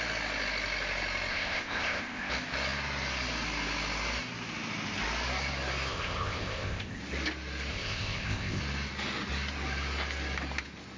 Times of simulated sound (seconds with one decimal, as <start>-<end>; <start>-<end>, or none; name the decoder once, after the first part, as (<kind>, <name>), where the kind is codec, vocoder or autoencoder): 1.3-2.3 (codec, ZipCodec); 5.9-7.0; 7.7-8.6